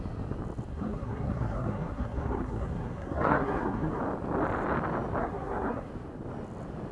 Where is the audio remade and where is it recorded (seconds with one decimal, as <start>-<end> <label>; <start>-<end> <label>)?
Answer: 0.0-0.7 recorded; 0.7-4.0 remade; 4.0-5.2 recorded; 5.2-5.9 remade; 5.9-6.9 recorded